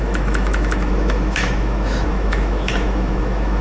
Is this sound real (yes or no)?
no